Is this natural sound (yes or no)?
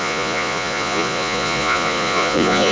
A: no